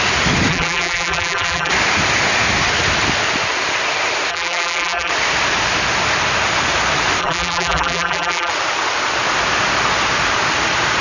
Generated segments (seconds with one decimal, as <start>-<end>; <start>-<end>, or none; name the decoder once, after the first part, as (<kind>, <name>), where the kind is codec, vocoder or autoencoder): 0.5-1.7 (vocoder, BigVGAN v2); 4.3-5.1; 7.2-8.5